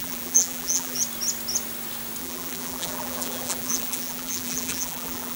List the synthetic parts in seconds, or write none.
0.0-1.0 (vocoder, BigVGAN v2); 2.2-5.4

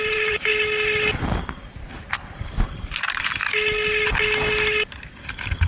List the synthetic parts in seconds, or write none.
0.0-0.5 (vocoder, BigVGAN v2); 1.6-3.4; 5.2-5.7

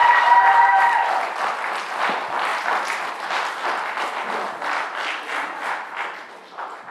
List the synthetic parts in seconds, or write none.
0.0-0.8 (vocoder, BigVGAN v2)

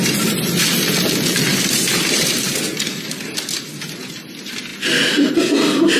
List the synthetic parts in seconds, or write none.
1.5-2.5 (vocoder, BigVGAN v2)

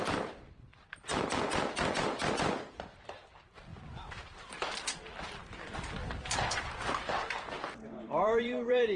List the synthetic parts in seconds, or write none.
0.0-0.7 (vocoder, BigVGAN v2); 1.7-5.4; 7.5-9.0

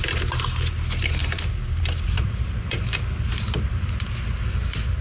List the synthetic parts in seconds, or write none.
1.2-3.9 (vocoder, BigVGAN v2)

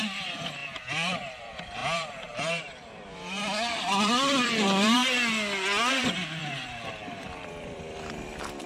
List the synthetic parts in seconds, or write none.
0.0-5.0 (vocoder, BigVGAN v2); 5.9-6.4; 7.1-8.7